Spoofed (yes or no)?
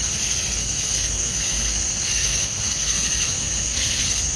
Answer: yes